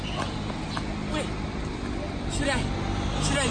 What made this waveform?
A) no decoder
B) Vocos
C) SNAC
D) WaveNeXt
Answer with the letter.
A